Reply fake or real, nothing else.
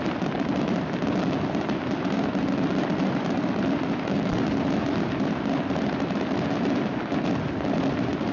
real